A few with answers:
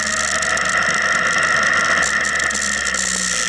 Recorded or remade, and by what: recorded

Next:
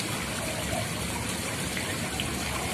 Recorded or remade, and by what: recorded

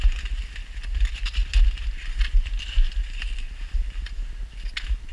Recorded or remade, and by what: recorded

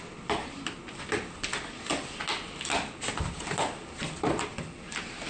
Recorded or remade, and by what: recorded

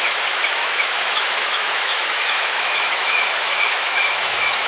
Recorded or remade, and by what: remade, autoencoder, DAC-VAE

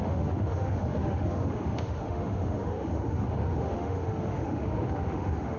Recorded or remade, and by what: remade, autoencoder, DAC-VAE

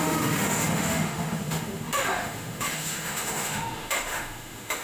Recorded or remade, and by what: remade, autoencoder, DAC-VAE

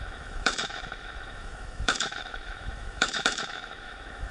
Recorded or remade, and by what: remade, autoencoder, DAC-VAE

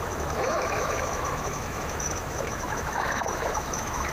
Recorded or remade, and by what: remade, autoencoder, DAC-VAE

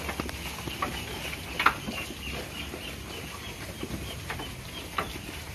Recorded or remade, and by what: recorded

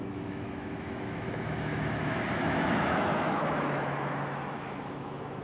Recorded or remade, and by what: remade, autoencoder, DAC-VAE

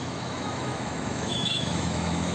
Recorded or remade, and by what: remade, autoencoder, DAC-VAE